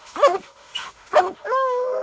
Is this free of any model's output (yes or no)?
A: no